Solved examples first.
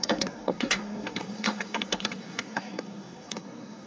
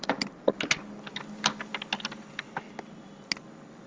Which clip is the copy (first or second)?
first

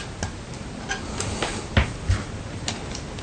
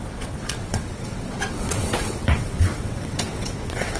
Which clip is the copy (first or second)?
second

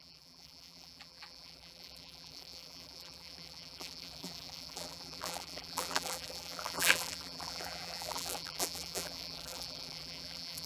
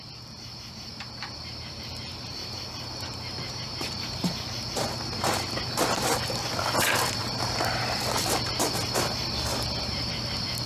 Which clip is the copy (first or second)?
first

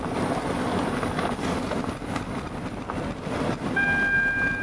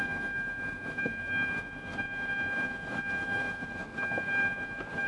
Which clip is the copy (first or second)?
second